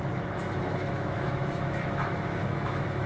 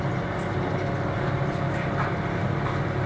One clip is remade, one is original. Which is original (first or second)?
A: second